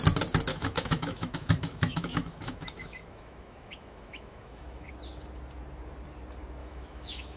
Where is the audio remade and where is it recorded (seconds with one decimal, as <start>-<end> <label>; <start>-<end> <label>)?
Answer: 0.0-0.5 recorded; 0.5-4.9 remade; 4.9-6.6 recorded; 6.6-7.4 remade